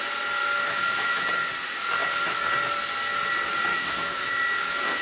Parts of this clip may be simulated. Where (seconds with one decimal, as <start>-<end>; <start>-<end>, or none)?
0.4-1.3; 3.7-5.0